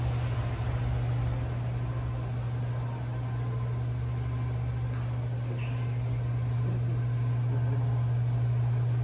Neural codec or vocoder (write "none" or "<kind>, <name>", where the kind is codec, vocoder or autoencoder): none